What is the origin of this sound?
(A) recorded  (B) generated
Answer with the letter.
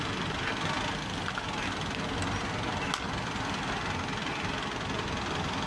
A